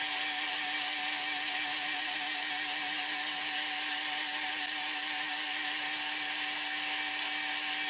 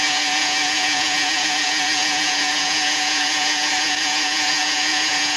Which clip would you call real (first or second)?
first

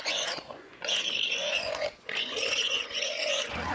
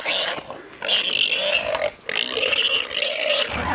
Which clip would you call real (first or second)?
second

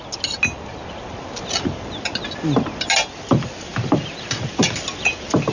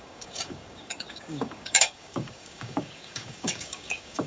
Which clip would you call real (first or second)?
first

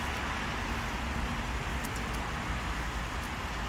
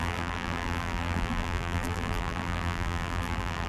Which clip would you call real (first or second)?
first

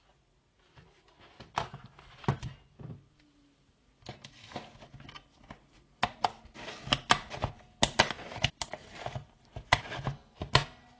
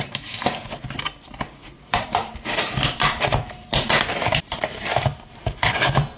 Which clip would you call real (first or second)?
first